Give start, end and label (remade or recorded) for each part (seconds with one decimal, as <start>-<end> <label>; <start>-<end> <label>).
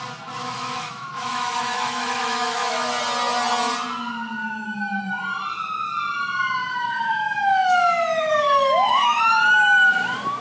0.0-0.4 recorded; 0.4-2.9 remade; 2.9-4.4 recorded; 4.4-5.0 remade; 5.0-6.6 recorded; 6.6-9.2 remade; 9.2-10.4 recorded